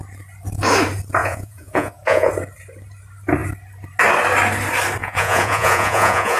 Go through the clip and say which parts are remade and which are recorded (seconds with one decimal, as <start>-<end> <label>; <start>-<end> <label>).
0.0-1.2 recorded; 1.2-2.3 remade; 2.3-5.0 recorded; 5.0-6.4 remade